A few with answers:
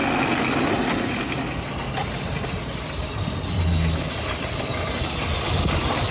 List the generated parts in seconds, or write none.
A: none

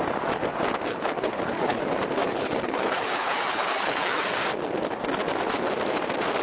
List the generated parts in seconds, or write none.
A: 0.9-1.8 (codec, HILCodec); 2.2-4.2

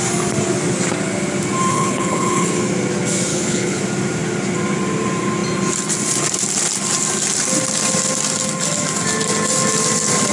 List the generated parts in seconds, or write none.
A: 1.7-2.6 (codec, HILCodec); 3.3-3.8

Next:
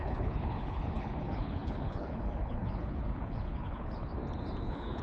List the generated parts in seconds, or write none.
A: 0.0-4.1 (codec, HILCodec); 4.6-5.0

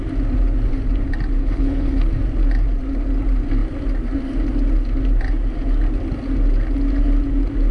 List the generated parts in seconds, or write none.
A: 1.4-2.0 (codec, HILCodec)

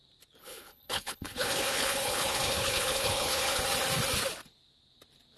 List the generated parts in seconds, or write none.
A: 0.4-3.6 (codec, HILCodec)